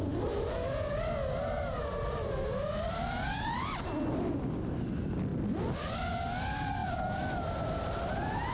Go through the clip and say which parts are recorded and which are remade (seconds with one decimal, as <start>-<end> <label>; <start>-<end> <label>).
0.0-8.5 recorded